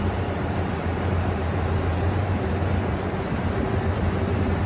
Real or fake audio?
fake